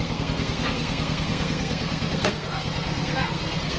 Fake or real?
fake